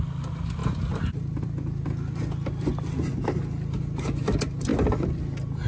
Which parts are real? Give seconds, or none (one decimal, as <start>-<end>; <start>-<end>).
0.0-5.7